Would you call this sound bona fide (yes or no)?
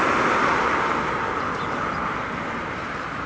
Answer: yes